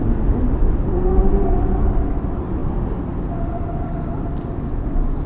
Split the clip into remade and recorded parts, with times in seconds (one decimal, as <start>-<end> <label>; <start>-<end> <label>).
0.0-5.3 recorded